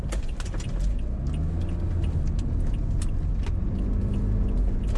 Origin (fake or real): real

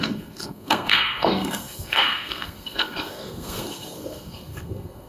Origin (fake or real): fake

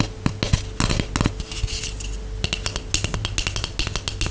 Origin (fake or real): real